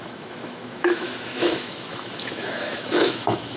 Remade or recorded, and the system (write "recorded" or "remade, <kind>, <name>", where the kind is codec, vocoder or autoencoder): remade, autoencoder, DAC-VAE